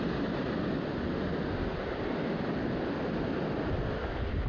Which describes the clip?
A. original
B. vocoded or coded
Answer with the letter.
A